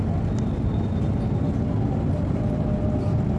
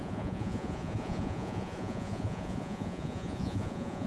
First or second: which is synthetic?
second